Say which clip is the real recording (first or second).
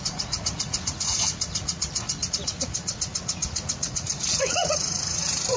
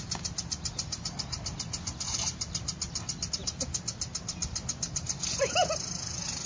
second